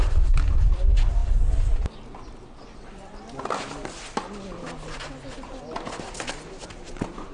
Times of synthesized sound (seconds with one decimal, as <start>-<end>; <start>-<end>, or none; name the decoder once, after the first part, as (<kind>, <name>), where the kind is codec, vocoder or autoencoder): none